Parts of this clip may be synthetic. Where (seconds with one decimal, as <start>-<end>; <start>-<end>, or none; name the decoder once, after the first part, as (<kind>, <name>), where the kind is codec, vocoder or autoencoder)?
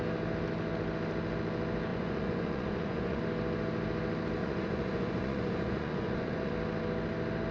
1.9-3.2 (vocoder, Vocos); 4.4-6.5